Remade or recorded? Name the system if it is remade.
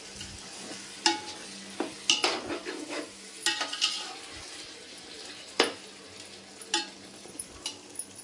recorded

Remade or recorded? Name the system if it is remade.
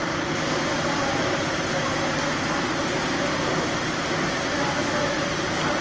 recorded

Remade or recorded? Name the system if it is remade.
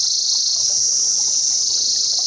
recorded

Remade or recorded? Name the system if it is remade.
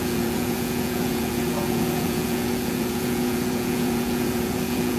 remade, vocoder, Vocos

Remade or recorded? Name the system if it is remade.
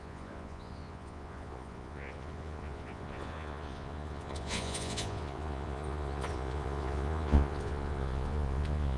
remade, vocoder, Vocos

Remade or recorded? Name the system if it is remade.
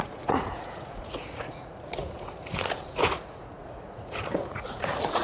remade, vocoder, Vocos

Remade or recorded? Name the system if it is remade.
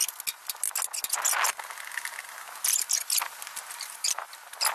recorded